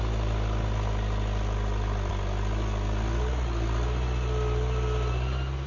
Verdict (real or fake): real